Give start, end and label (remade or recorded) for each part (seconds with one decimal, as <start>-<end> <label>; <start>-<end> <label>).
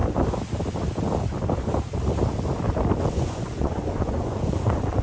0.0-3.0 recorded; 3.0-5.0 remade